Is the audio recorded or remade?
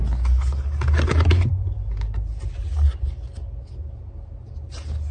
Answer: recorded